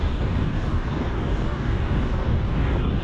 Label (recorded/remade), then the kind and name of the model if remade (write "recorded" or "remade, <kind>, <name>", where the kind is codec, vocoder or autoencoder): remade, codec, DAC